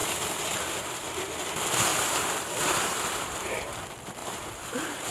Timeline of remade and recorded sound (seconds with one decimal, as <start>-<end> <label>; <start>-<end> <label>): 0.0-1.9 recorded; 1.9-3.7 remade; 3.7-4.2 recorded; 4.2-5.1 remade